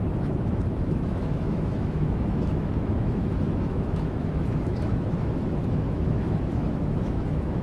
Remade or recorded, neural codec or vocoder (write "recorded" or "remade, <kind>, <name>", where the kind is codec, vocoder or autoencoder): remade, autoencoder, DAC-VAE